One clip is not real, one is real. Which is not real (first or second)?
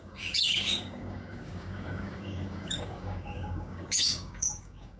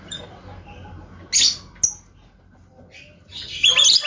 first